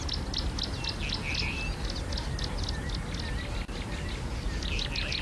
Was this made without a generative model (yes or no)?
yes